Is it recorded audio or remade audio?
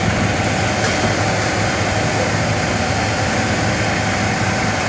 recorded